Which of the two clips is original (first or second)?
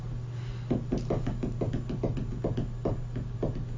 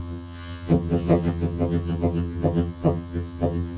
first